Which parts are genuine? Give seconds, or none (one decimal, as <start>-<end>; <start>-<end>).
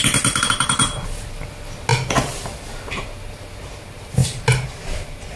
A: 0.8-1.9; 3.6-4.2; 4.7-5.4